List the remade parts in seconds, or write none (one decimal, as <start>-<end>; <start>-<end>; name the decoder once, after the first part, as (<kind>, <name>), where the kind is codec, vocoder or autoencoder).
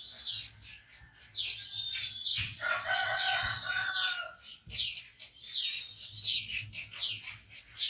2.3-3.9 (vocoder, WaveNeXt)